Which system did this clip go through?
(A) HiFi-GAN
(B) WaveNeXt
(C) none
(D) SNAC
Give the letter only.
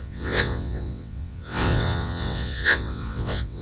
B